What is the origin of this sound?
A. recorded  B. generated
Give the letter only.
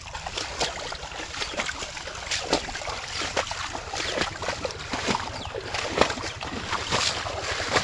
B